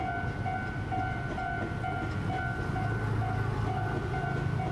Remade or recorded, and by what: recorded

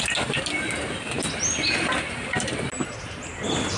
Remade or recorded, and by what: recorded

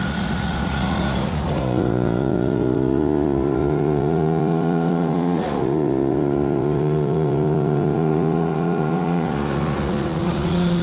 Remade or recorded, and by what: remade, vocoder, Vocos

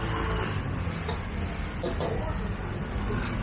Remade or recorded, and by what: recorded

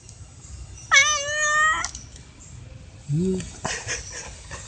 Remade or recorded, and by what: recorded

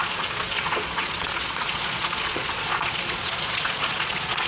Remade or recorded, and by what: remade, vocoder, Vocos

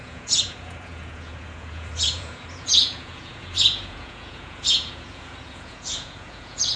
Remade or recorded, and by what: remade, vocoder, Vocos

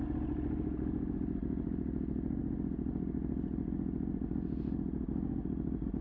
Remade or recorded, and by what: recorded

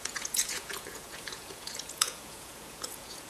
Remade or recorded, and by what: remade, vocoder, Vocos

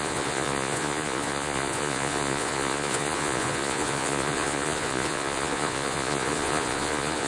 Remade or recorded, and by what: remade, vocoder, Vocos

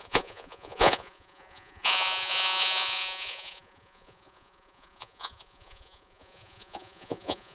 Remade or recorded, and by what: remade, vocoder, Vocos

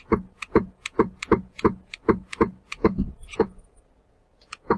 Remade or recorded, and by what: remade, vocoder, Vocos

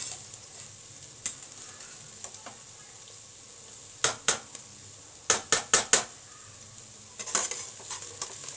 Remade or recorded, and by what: recorded